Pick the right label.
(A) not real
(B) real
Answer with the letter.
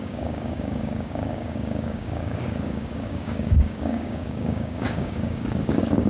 A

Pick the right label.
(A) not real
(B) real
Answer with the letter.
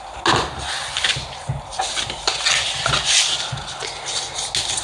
B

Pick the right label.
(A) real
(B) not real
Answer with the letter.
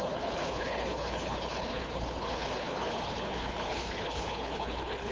B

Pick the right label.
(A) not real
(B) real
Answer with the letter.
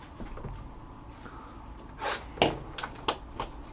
B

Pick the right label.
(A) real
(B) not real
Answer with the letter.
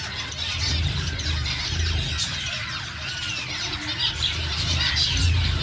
A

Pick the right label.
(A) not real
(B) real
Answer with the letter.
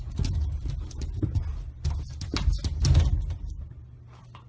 B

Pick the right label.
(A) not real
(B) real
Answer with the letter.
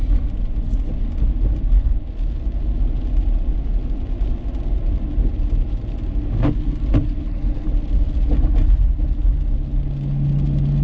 B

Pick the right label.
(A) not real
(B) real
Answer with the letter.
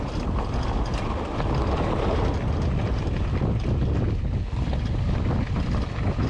B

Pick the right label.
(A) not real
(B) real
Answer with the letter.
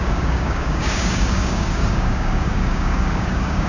A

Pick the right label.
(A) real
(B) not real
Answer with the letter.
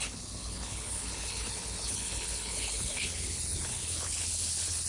B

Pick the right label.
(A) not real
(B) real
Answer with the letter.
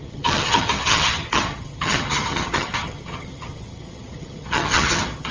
A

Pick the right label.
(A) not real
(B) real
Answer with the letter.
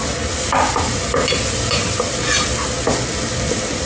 B